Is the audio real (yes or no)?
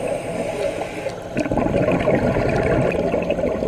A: yes